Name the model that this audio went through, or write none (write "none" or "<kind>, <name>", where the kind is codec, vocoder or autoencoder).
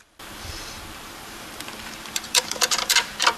vocoder, BigVGAN v2